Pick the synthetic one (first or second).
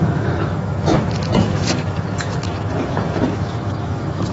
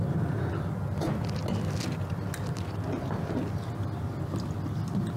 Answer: first